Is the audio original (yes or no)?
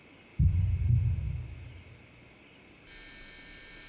yes